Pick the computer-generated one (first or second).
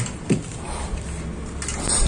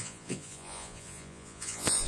second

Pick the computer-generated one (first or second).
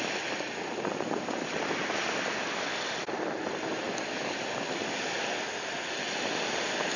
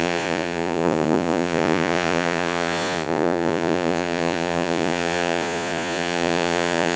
second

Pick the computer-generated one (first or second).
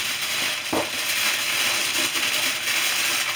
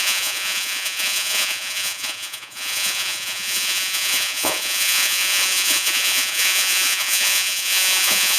second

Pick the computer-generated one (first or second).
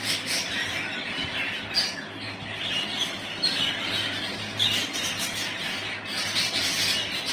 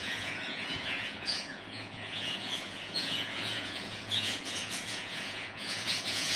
second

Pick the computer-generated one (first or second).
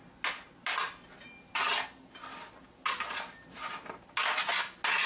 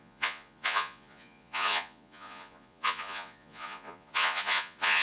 second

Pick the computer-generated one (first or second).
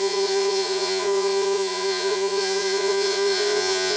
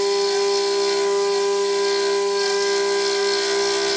first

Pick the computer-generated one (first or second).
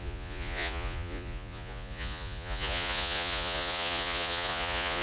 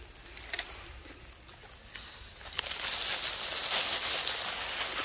first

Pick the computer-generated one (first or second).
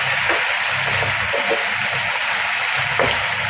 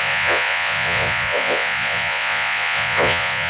second